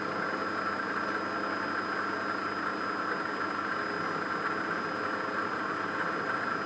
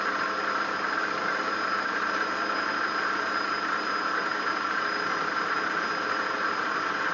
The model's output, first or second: second